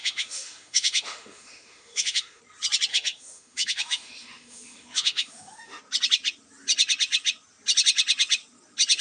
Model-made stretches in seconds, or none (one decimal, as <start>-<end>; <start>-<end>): 0.0-2.4; 2.9-5.8